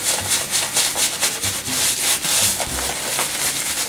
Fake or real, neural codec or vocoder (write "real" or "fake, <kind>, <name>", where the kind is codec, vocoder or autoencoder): real